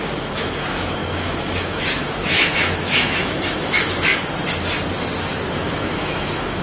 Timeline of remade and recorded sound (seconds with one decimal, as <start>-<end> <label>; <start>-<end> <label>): 0.0-4.1 remade; 4.1-5.5 recorded; 5.5-6.6 remade

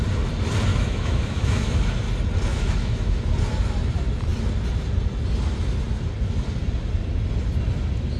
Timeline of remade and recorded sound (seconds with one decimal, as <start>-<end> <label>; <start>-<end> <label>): 0.0-0.7 recorded; 0.7-1.8 remade; 1.8-2.5 recorded; 2.5-3.2 remade; 3.2-8.2 recorded

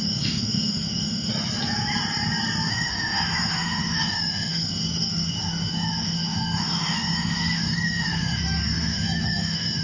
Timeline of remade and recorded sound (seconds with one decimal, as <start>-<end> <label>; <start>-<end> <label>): 0.0-1.3 remade; 1.3-2.7 recorded; 2.7-9.8 remade